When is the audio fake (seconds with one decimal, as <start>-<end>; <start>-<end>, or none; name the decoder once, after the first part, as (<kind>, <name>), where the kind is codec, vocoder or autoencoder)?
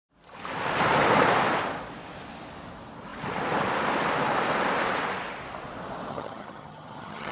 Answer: 6.1-7.3 (vocoder, HiFi-GAN)